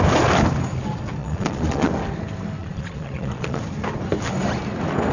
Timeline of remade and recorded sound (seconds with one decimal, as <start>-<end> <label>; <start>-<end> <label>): 0.0-1.2 recorded; 1.2-1.9 remade; 1.9-2.6 recorded; 2.6-3.6 remade; 3.6-5.1 recorded